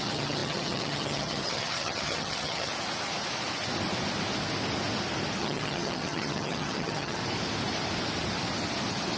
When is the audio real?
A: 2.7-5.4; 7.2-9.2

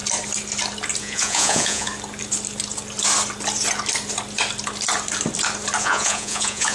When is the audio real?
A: 0.0-1.0; 1.9-5.8